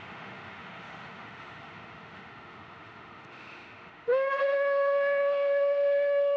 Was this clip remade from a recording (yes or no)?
yes